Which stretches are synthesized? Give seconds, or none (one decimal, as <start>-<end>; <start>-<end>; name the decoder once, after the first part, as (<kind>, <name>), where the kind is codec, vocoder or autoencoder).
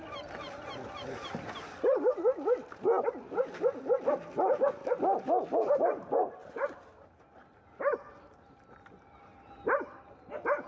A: none